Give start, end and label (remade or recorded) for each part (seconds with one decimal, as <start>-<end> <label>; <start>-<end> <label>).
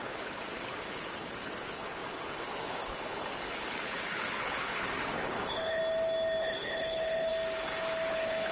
0.0-5.8 remade; 5.8-6.4 recorded; 6.4-7.3 remade; 7.3-8.1 recorded; 8.1-8.5 remade